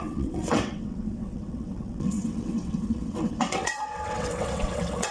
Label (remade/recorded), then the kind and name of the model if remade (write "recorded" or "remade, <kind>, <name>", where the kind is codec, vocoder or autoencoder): remade, vocoder, WaveNeXt